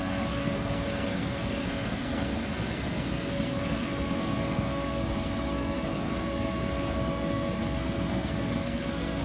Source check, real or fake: fake